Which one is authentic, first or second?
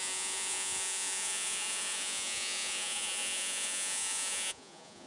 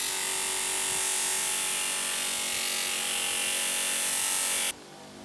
second